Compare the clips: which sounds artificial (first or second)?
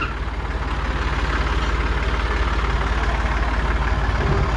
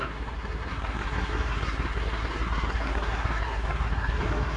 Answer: second